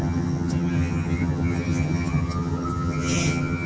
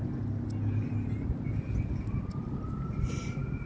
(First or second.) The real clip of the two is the second